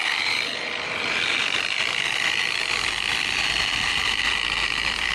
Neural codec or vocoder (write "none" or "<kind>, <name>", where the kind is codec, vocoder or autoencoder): vocoder, BigVGAN v2